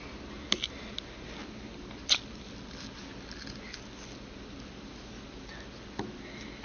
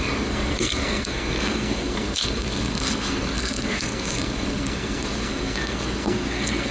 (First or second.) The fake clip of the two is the second